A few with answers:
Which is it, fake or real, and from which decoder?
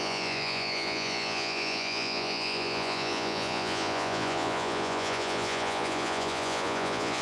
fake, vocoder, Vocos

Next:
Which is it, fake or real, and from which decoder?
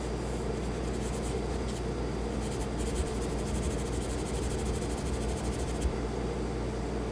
real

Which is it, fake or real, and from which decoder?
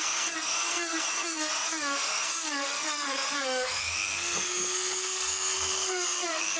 fake, codec, SNAC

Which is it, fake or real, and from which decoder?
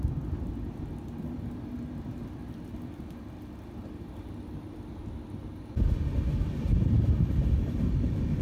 real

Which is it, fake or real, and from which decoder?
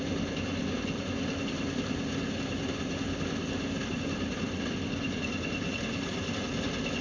real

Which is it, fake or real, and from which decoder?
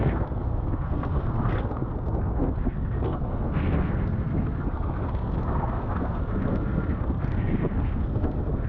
fake, codec, SNAC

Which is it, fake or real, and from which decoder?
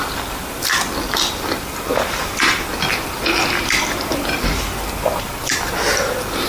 real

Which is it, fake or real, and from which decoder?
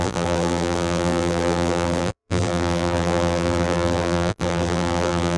fake, vocoder, BigVGAN v2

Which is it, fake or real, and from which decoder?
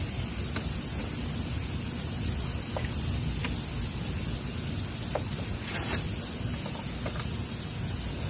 real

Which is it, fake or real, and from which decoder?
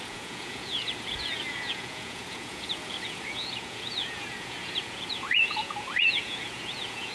fake, vocoder, Vocos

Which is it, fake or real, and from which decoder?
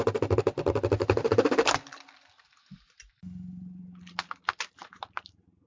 real